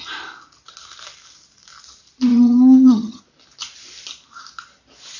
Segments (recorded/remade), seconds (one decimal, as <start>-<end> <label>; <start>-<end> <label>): 0.0-2.3 recorded; 2.3-3.2 remade; 3.2-5.2 recorded